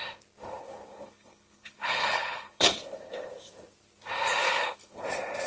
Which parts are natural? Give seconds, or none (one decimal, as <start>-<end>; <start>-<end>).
0.0-0.6; 3.3-4.4; 5.0-5.5

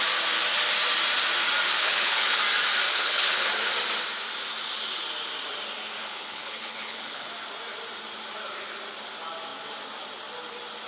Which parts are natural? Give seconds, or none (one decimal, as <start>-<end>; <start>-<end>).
0.0-1.8; 2.4-2.9; 3.5-6.0; 7.3-10.9

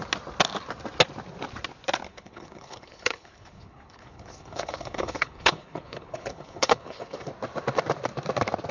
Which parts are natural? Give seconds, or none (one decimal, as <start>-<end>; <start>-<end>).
0.0-2.1; 7.3-8.7

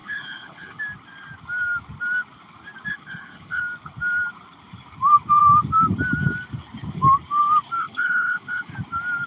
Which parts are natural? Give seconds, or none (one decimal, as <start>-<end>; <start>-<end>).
0.8-2.9; 3.6-7.8; 8.7-9.3

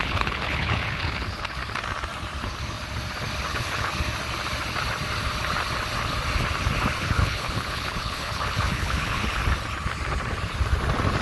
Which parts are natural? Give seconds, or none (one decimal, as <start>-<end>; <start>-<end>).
1.6-3.5; 3.9-7.0; 9.4-11.2

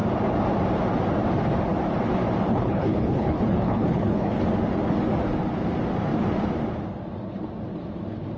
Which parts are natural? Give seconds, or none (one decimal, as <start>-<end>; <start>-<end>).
0.0-2.5; 4.4-8.4